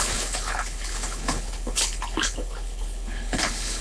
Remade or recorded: remade